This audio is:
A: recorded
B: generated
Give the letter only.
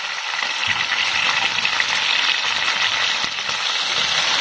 A